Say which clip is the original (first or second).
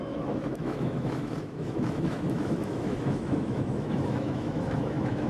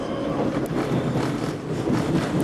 second